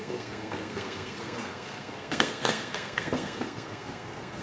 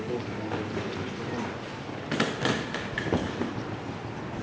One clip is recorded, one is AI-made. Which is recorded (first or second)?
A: second